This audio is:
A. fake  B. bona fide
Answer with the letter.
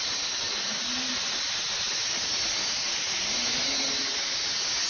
B